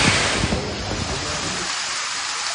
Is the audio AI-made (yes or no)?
no